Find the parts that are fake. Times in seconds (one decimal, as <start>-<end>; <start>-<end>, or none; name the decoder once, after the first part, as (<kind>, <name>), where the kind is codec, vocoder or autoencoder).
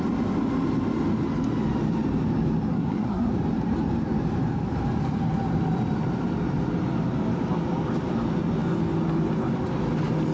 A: 2.7-3.3 (codec, SNAC)